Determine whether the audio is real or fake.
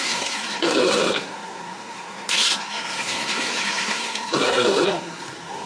fake